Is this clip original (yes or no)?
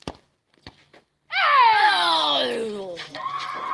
yes